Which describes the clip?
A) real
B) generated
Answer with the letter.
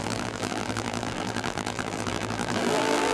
B